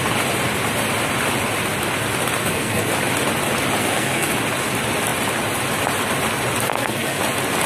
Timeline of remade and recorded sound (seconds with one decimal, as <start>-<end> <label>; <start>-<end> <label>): 0.0-2.4 recorded; 2.4-2.9 remade; 2.9-3.8 recorded; 3.8-4.3 remade; 4.3-6.7 recorded; 6.7-7.2 remade; 7.2-7.7 recorded